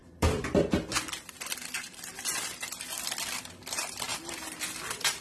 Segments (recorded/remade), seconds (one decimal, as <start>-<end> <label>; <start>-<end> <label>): 0.0-3.1 remade; 3.1-4.1 recorded; 4.1-5.2 remade